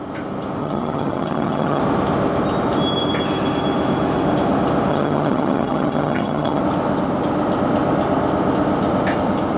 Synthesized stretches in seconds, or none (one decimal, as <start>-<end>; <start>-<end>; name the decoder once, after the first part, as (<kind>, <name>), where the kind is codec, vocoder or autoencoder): 0.6-1.8 (vocoder, HiFi-GAN); 4.9-6.6